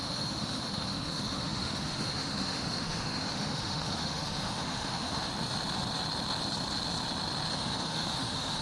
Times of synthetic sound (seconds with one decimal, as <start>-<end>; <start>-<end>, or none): 0.0-5.3; 7.5-8.6